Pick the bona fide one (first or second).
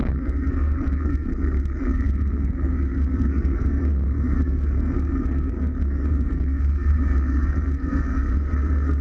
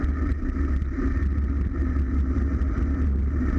second